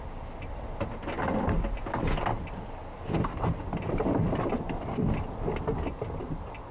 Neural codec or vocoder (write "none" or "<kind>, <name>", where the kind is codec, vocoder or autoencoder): none